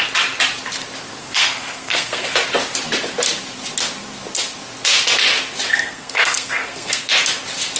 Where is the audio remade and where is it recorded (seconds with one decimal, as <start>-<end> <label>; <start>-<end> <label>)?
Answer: 0.0-1.2 recorded; 1.2-2.3 remade; 2.3-5.7 recorded; 5.7-7.1 remade; 7.1-7.8 recorded